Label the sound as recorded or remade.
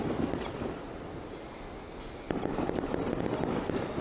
recorded